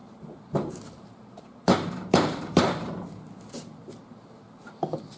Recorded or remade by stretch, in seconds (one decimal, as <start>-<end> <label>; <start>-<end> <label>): 0.0-3.1 remade; 3.1-5.2 recorded